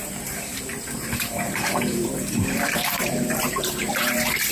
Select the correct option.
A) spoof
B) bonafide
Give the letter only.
A